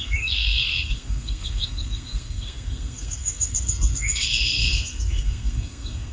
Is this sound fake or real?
fake